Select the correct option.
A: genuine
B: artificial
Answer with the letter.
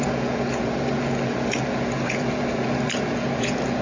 B